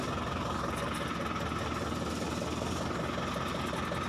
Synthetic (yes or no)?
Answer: no